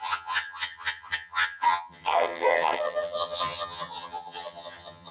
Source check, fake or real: fake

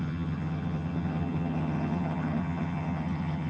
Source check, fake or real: fake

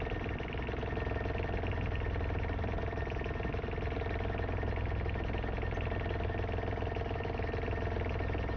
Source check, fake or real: real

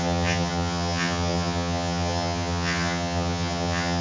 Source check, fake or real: fake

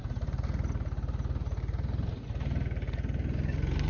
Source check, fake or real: real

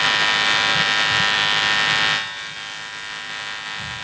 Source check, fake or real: real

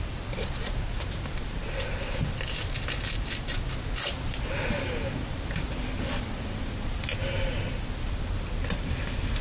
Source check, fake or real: real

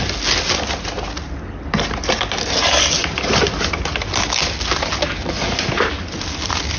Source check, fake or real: real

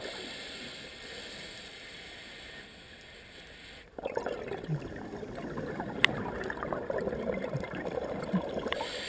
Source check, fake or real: real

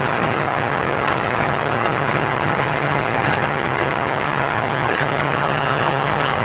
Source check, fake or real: fake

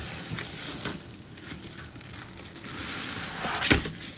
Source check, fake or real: real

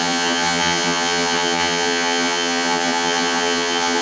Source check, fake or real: fake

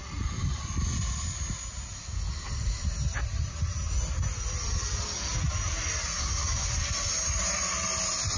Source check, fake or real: real